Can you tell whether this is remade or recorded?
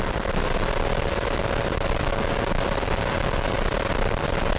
recorded